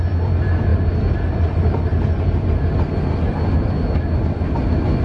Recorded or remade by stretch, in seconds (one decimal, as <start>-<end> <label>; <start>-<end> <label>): 0.0-5.0 recorded